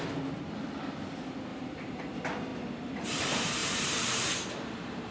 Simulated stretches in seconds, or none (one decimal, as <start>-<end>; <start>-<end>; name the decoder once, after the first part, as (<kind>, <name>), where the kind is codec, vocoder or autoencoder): 1.5-2.0 (vocoder, BigVGAN v2); 3.6-5.1